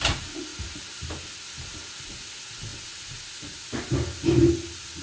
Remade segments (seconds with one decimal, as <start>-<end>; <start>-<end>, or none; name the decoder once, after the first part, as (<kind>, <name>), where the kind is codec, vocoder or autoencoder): none